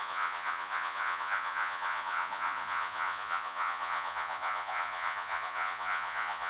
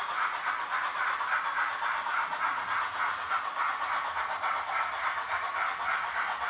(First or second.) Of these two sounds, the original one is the second